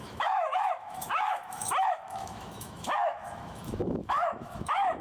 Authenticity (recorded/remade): remade